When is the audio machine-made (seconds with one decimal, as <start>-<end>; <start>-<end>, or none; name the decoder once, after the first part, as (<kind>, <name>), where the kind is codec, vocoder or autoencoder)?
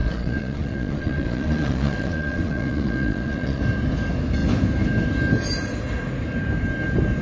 0.0-3.6 (vocoder, Vocos)